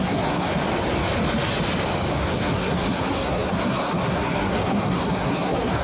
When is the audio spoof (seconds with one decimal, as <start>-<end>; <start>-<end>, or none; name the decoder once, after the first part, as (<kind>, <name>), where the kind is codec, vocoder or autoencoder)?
0.0-0.5 (codec, SNAC); 2.1-5.8